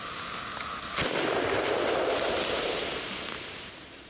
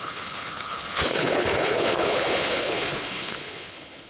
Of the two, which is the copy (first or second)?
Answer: second